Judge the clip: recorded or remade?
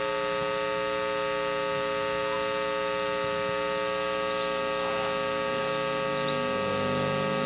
recorded